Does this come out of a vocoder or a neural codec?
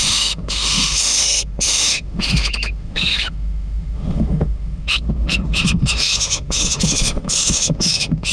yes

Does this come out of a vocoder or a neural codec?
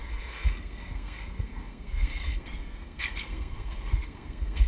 yes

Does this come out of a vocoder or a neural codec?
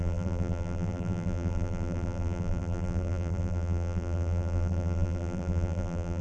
yes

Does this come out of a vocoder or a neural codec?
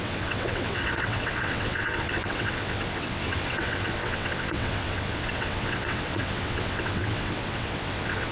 yes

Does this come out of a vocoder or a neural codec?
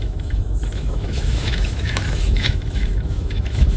yes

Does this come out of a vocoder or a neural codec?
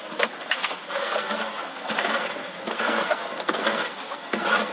yes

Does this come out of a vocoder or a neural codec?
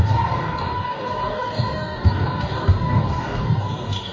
yes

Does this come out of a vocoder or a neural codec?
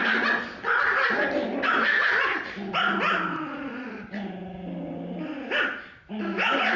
no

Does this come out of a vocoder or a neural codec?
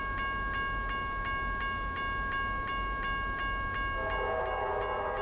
no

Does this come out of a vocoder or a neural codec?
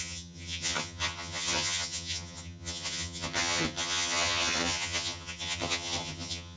yes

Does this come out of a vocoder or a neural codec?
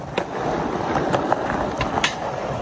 no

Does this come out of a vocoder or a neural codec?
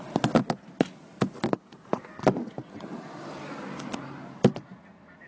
no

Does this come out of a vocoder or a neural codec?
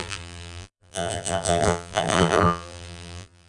yes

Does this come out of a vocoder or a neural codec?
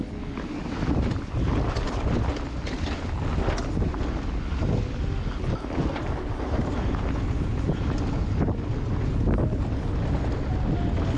no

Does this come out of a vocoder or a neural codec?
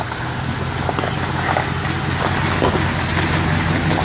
no